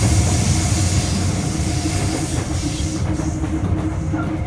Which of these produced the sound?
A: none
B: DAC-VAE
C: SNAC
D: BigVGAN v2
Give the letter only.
A